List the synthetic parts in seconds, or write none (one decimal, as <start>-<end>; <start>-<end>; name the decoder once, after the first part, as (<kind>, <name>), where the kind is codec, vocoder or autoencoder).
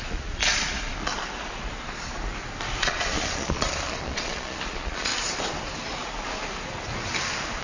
0.0-0.4 (vocoder, Vocos); 2.8-5.1